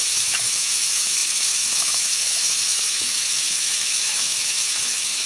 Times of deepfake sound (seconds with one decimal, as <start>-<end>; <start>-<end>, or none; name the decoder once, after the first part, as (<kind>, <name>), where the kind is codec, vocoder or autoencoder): 0.0-5.3 (autoencoder, DAC-VAE)